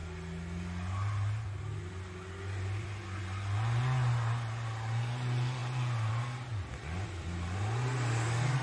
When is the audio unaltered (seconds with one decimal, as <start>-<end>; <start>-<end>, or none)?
0.0-8.6